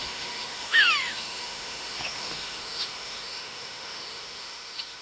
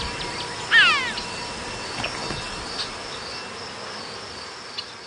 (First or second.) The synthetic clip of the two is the first